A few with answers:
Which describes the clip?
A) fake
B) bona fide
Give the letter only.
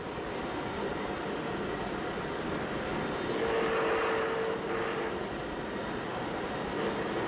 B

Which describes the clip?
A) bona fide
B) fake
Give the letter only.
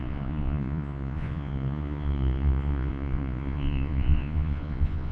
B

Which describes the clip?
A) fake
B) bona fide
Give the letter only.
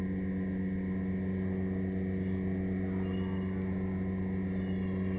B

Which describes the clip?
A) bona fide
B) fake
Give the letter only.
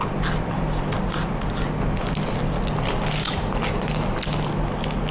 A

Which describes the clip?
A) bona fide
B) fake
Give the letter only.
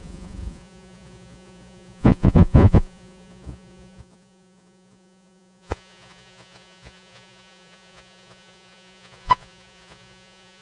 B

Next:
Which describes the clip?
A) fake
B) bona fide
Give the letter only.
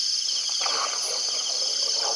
B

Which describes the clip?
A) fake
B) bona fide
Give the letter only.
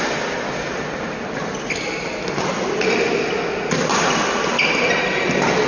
B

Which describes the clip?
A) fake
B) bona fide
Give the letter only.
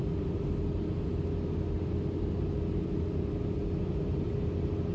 B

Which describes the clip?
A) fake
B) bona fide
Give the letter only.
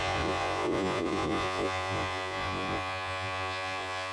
A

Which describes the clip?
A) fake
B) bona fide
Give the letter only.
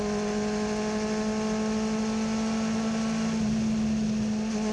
B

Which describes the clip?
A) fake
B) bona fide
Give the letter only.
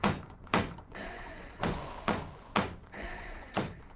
A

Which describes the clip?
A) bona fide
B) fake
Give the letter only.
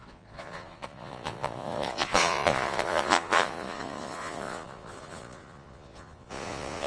B